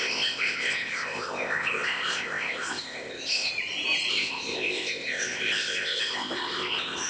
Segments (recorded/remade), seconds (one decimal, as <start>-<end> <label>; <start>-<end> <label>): 0.0-3.5 remade; 3.5-4.1 recorded; 4.1-7.1 remade